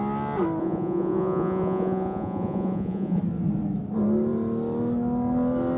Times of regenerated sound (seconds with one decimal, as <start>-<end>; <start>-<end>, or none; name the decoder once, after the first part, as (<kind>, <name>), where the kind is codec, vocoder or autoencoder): 0.6-3.2 (vocoder, Vocos)